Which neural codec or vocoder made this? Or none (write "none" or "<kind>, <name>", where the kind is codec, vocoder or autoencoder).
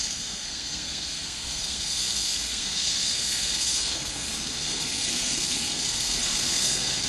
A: codec, SNAC